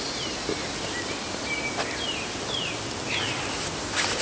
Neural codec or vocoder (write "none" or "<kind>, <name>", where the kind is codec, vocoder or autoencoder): none